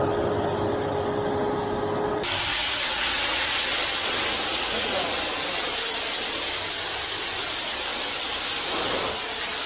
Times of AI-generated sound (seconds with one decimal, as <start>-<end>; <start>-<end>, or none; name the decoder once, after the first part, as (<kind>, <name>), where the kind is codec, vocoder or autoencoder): 2.5-3.5 (vocoder, Vocos); 4.5-5.1